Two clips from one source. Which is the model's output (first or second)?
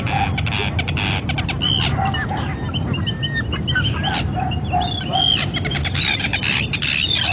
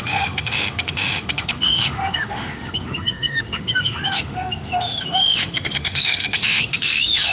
second